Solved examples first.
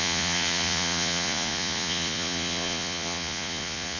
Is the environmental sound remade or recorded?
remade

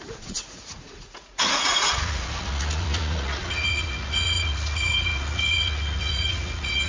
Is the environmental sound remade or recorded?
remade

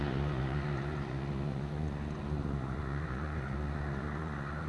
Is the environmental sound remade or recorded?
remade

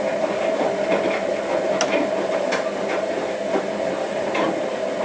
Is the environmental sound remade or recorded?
recorded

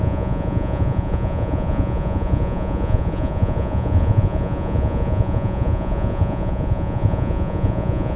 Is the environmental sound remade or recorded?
remade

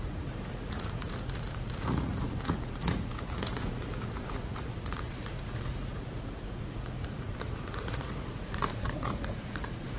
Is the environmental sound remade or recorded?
remade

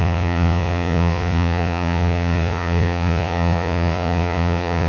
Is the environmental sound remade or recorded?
remade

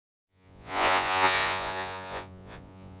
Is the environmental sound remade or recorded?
remade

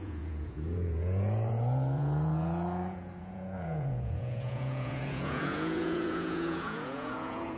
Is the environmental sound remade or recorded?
remade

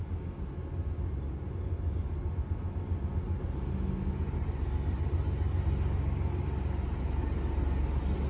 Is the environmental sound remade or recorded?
recorded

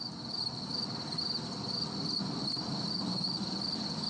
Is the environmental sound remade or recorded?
recorded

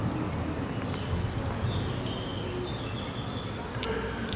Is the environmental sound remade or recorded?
recorded